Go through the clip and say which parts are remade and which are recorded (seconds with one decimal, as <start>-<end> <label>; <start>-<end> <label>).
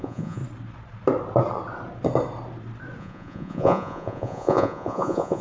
0.0-0.4 remade; 0.4-3.0 recorded; 3.0-5.4 remade